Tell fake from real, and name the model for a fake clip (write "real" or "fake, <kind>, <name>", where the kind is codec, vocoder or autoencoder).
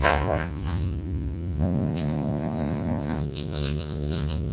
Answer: fake, vocoder, Vocos